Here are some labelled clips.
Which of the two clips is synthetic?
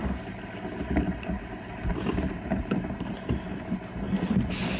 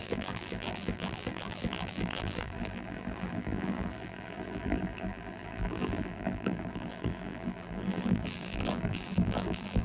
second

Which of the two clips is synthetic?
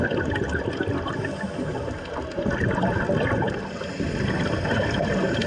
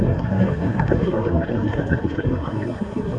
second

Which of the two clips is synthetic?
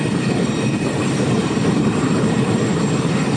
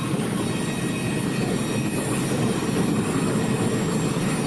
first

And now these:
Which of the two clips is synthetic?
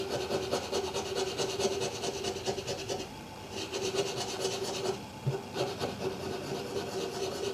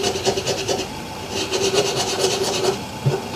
second